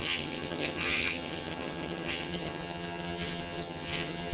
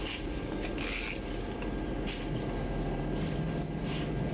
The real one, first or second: second